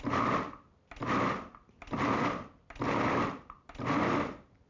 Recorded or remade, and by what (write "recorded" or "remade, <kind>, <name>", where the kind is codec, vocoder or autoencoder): recorded